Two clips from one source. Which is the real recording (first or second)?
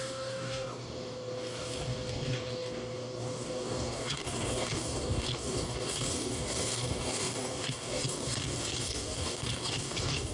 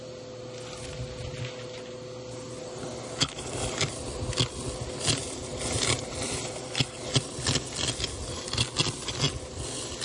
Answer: second